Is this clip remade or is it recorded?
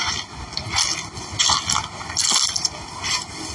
recorded